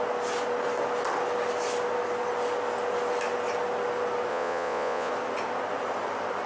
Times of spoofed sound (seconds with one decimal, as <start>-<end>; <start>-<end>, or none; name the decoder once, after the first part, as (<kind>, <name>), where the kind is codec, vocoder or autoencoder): 4.3-5.1 (vocoder, Vocos)